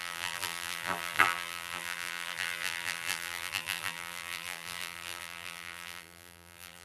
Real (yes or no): no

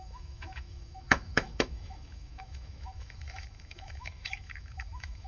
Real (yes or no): no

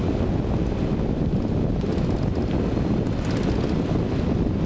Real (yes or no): yes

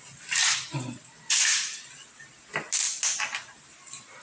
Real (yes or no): yes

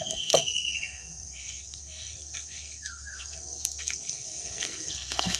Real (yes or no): no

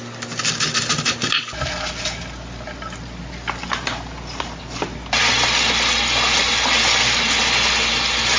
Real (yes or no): yes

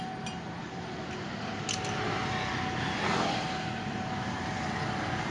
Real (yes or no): yes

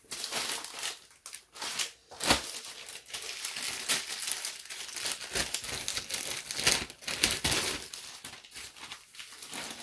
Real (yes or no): yes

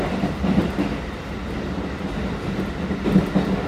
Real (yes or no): yes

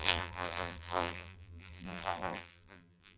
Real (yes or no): no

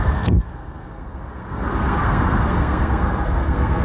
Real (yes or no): no